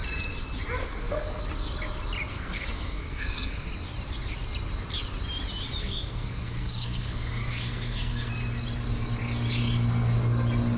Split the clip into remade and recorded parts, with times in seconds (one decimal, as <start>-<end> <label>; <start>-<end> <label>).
0.0-0.8 recorded; 0.8-1.4 remade; 1.4-2.3 recorded; 2.3-3.7 remade; 3.7-5.8 recorded; 5.8-8.3 remade; 8.3-10.8 recorded